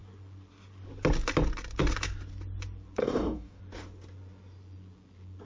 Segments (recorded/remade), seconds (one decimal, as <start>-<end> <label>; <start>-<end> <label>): 0.0-3.0 recorded; 3.0-3.6 remade; 3.6-5.5 recorded